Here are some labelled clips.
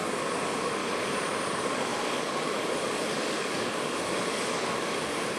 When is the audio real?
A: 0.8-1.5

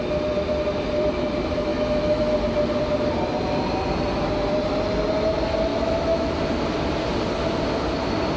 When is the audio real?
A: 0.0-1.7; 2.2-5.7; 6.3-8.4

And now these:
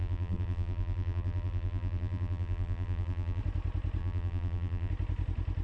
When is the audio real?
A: 3.4-4.0; 4.9-5.6